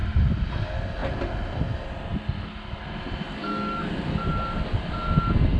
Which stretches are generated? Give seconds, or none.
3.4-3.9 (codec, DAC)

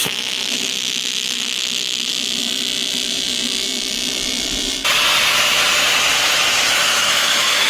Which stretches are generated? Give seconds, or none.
0.0-2.1 (autoencoder, DAC-VAE); 6.7-7.7

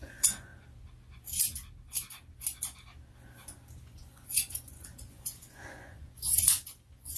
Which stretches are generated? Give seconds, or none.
0.0-0.5 (vocoder, Vocos); 3.8-7.2